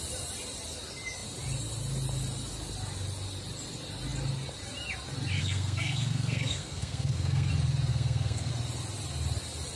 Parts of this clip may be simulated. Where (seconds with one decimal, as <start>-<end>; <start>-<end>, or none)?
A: 5.4-7.5; 7.9-8.5